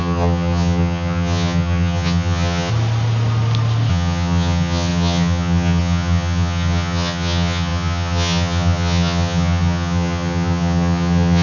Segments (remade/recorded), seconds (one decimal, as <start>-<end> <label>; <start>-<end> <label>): 0.0-2.7 remade; 2.7-3.9 recorded; 3.9-11.4 remade